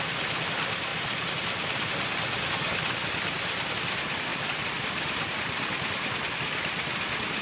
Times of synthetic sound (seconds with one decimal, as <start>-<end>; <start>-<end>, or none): 4.3-5.9